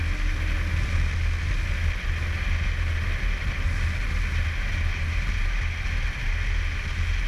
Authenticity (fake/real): real